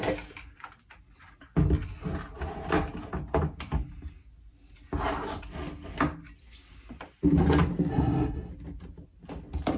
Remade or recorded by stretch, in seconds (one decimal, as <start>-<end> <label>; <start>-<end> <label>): 0.0-7.9 recorded; 7.9-8.5 remade; 8.5-9.8 recorded